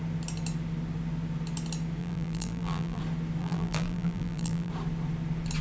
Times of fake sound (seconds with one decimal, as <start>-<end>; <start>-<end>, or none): 2.0-3.0; 3.4-4.7